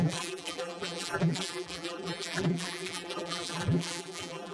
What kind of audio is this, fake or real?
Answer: fake